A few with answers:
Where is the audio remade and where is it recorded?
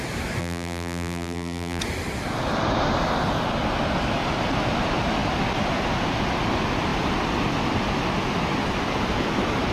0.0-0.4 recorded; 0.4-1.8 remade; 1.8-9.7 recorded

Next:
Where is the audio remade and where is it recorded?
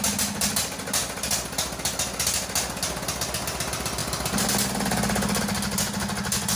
0.0-6.6 recorded